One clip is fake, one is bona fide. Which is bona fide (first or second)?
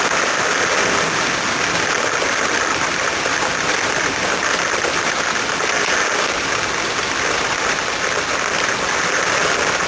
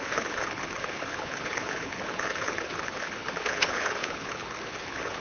first